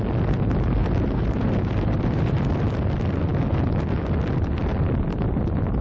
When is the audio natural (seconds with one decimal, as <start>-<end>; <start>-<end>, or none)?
0.0-0.8; 2.4-5.8